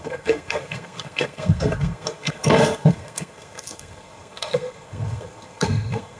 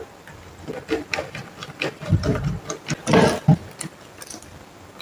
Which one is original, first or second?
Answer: second